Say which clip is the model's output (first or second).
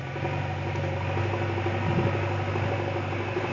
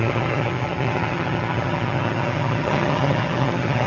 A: second